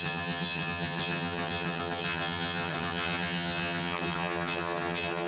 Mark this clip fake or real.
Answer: fake